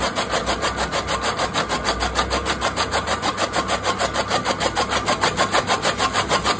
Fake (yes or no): no